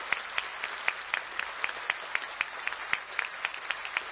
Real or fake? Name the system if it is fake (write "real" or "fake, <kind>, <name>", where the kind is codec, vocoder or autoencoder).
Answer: real